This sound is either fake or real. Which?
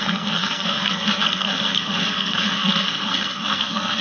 fake